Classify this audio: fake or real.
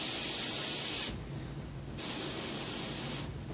real